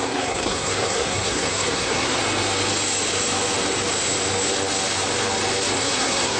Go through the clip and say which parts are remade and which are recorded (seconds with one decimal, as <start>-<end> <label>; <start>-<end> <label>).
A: 0.0-2.2 remade; 2.2-5.8 recorded; 5.8-6.4 remade